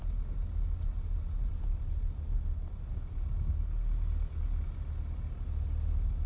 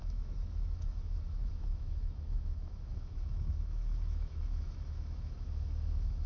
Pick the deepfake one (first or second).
second